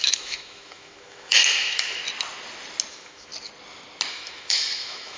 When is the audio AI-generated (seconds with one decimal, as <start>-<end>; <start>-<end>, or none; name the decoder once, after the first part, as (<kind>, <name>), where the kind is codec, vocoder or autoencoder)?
0.0-2.0 (autoencoder, DAC-VAE); 2.9-3.3; 4.1-5.2